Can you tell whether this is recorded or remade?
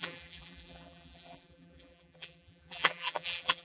remade